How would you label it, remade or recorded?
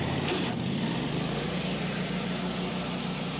recorded